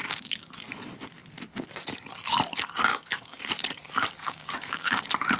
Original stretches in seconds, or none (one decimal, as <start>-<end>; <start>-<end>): 0.5-2.9; 3.5-4.2; 5.0-5.4